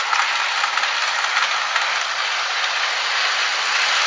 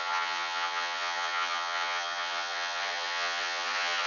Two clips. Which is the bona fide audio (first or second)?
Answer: first